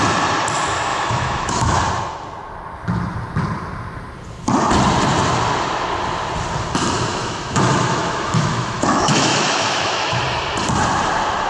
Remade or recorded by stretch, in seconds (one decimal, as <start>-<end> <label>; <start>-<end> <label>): 0.0-0.9 recorded; 0.9-1.8 remade; 1.8-7.1 recorded; 7.1-10.2 remade; 10.2-11.5 recorded